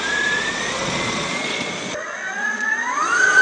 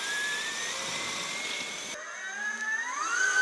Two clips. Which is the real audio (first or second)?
second